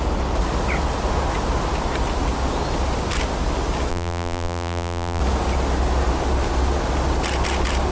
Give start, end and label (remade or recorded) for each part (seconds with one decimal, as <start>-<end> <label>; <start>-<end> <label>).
0.0-3.9 recorded; 3.9-5.2 remade; 5.2-7.9 recorded